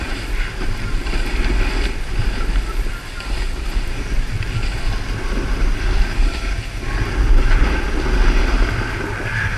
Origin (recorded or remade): recorded